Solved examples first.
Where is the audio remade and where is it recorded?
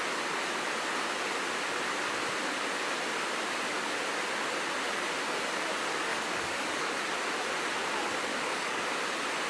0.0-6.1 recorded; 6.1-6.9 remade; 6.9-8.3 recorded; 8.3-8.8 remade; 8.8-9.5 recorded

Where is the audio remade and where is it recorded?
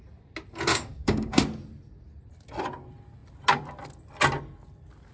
0.0-0.7 recorded; 0.7-1.4 remade; 1.4-5.1 recorded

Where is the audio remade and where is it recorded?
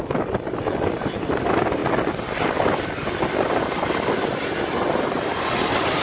0.0-6.0 recorded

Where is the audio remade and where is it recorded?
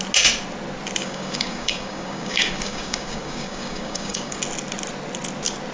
0.0-1.0 recorded; 1.0-4.4 remade; 4.4-5.7 recorded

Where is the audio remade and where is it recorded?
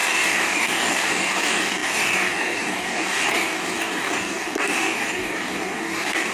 0.0-6.3 remade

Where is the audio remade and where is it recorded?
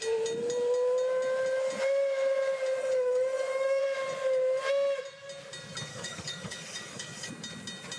0.0-2.8 recorded; 2.8-3.8 remade; 3.8-5.9 recorded; 5.9-7.3 remade; 7.3-8.0 recorded